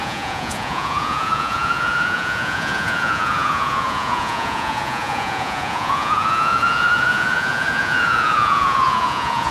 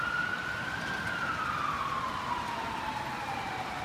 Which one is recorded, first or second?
second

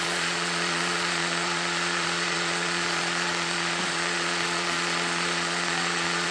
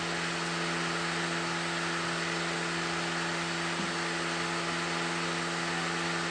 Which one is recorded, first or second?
second